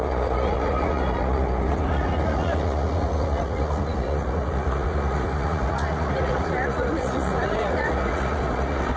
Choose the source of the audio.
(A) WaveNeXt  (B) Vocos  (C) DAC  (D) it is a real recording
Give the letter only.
B